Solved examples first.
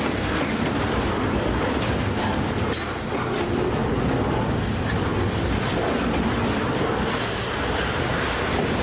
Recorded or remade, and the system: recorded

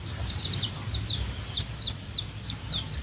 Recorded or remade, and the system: remade, vocoder, BigVGAN v2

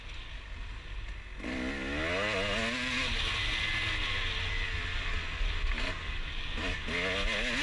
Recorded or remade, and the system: recorded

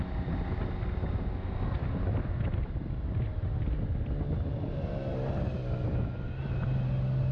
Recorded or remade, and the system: recorded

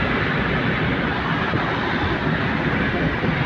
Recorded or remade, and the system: recorded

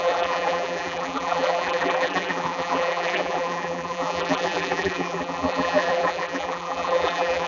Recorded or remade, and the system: remade, vocoder, BigVGAN v2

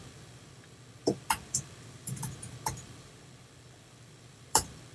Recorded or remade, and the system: remade, vocoder, BigVGAN v2